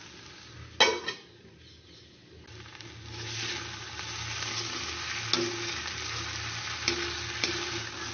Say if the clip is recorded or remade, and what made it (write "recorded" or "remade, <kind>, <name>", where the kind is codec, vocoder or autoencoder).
recorded